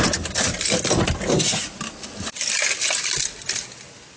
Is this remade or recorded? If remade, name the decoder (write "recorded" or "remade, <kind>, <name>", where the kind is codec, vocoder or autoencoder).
recorded